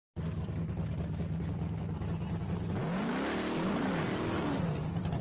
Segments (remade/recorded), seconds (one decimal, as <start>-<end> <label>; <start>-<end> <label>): 0.0-5.2 recorded